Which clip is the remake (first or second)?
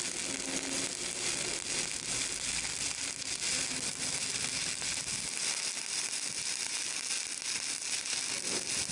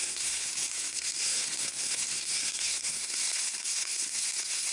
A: second